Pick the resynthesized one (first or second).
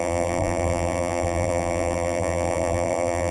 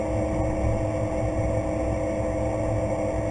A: first